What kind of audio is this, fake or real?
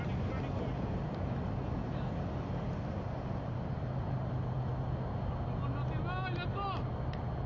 real